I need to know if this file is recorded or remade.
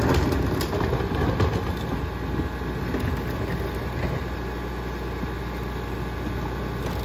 recorded